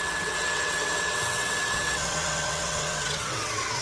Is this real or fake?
fake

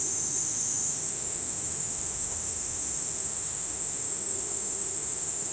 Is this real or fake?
fake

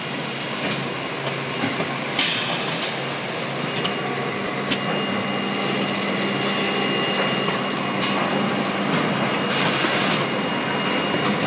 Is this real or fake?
real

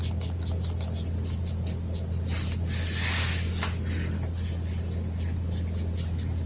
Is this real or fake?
real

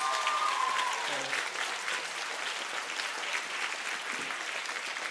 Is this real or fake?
real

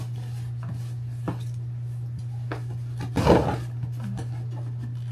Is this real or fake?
real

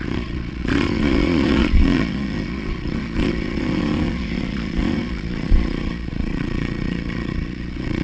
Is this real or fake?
fake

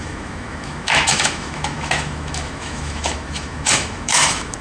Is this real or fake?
fake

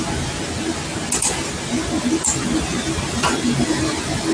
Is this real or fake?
real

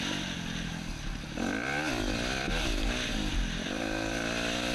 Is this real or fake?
real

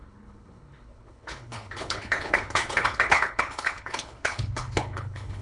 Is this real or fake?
fake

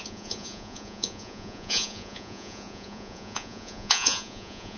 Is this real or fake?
fake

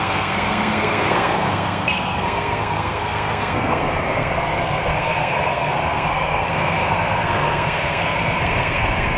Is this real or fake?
fake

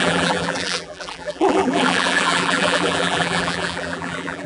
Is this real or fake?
fake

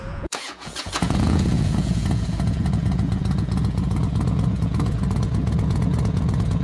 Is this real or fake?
fake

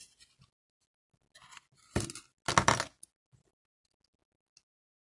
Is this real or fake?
real